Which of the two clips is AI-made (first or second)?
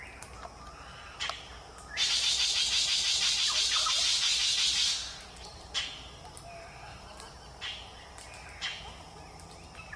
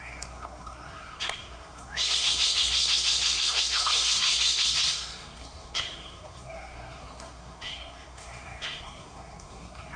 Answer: second